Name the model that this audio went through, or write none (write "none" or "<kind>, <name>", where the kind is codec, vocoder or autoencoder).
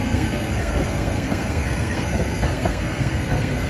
codec, SNAC